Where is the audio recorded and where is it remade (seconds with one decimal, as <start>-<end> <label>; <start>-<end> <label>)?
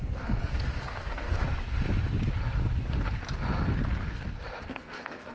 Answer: 0.0-1.4 remade; 1.4-4.6 recorded; 4.6-5.3 remade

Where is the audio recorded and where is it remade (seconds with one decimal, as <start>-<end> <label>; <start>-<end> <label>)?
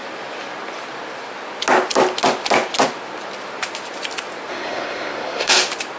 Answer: 0.0-4.5 recorded; 4.5-5.5 remade; 5.5-6.0 recorded